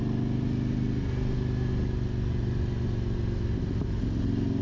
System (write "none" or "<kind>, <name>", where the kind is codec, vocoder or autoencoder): none